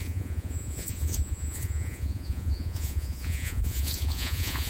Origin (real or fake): fake